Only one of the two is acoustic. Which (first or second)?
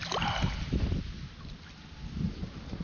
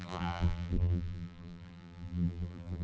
first